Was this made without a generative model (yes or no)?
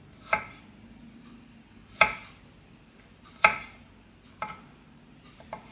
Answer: yes